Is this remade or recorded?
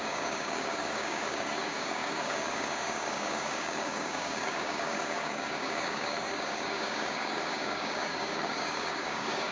remade